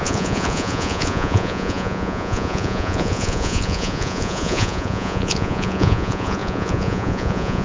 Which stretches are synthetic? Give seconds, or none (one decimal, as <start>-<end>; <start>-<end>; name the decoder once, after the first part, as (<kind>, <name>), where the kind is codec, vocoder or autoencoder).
0.0-7.6 (vocoder, Vocos)